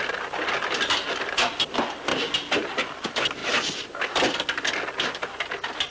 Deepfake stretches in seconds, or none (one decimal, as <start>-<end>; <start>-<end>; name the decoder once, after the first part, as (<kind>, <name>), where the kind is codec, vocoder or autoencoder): none